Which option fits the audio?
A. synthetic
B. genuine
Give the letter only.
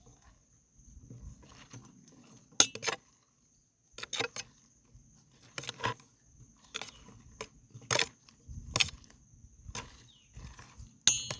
B